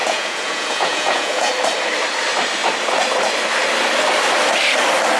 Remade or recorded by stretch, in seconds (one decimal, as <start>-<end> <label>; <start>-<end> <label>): 0.0-1.5 remade; 1.5-5.2 recorded